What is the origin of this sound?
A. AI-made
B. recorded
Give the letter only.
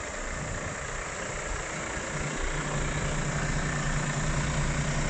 B